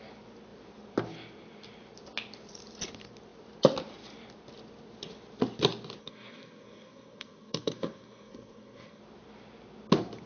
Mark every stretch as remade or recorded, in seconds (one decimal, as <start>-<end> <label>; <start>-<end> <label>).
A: 0.0-6.0 recorded; 6.0-9.0 remade; 9.0-10.3 recorded